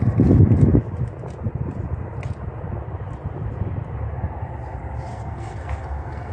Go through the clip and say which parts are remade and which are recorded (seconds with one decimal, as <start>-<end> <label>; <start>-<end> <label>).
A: 0.0-5.1 recorded; 5.1-6.3 remade